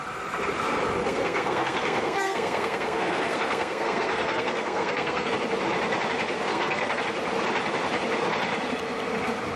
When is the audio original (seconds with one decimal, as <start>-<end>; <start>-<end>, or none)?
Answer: 0.0-1.0; 5.3-6.5; 7.0-9.6